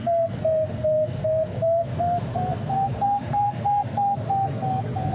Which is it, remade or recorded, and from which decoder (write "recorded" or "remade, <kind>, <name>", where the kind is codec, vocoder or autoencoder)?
remade, codec, SNAC